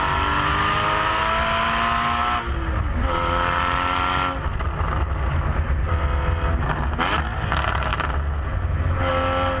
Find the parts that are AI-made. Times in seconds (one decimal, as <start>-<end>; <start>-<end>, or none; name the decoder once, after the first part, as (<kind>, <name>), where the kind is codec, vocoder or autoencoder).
none